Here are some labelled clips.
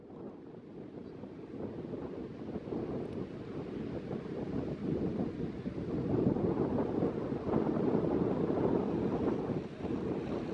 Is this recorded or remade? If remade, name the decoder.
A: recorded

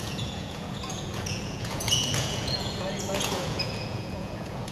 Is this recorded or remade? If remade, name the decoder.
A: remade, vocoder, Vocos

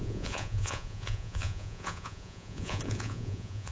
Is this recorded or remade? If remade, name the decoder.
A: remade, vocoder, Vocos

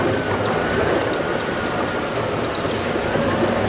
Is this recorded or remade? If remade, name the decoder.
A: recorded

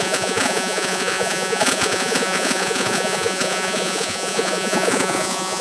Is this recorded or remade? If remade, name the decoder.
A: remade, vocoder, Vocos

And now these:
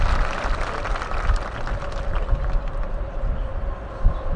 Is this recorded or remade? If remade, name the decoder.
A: recorded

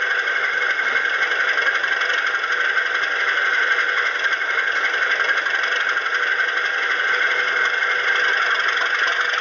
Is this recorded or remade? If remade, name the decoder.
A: recorded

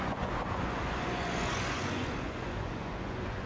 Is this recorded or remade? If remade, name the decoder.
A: remade, vocoder, Vocos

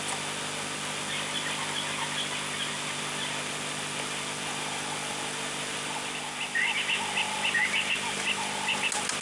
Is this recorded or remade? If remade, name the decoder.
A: recorded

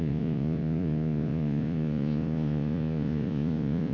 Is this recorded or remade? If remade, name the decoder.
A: remade, vocoder, Vocos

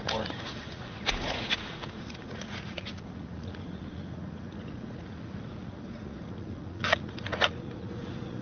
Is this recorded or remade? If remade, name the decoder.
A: remade, vocoder, Vocos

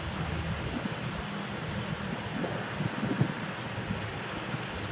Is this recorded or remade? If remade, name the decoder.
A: recorded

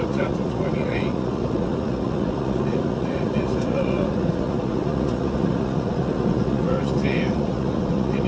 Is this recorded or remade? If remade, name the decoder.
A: remade, vocoder, Vocos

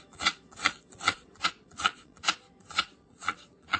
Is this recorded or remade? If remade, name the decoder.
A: remade, vocoder, Vocos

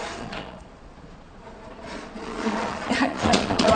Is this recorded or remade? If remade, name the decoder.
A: remade, vocoder, Vocos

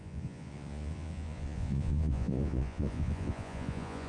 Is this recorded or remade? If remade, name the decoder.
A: remade, vocoder, Vocos